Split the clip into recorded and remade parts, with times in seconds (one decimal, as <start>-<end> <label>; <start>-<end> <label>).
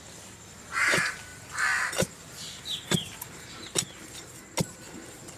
0.0-5.4 recorded